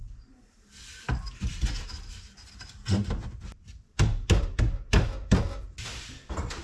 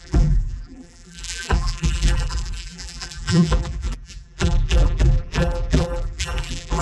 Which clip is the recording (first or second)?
first